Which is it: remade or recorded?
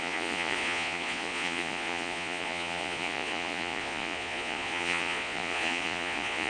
remade